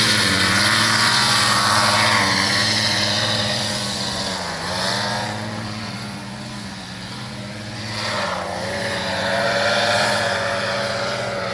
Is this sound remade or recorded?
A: remade